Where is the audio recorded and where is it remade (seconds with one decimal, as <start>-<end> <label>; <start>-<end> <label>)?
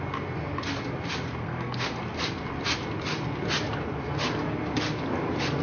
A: 0.0-1.4 recorded; 1.4-2.0 remade; 2.0-5.6 recorded